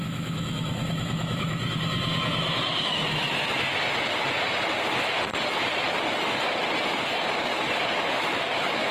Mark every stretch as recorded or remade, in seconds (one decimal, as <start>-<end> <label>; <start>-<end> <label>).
0.0-3.4 remade; 3.4-8.1 recorded; 8.1-8.9 remade